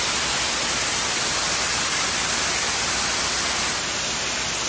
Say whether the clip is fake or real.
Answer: real